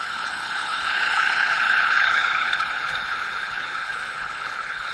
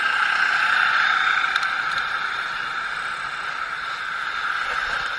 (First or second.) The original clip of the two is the second